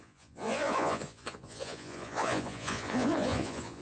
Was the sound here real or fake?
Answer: fake